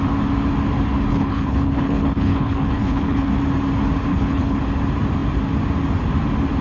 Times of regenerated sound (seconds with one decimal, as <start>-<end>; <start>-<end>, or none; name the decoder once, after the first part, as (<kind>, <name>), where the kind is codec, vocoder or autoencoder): 1.1-3.3 (codec, HILCodec); 4.1-4.6